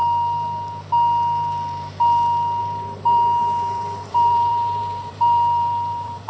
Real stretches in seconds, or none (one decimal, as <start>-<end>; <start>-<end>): 0.0-2.6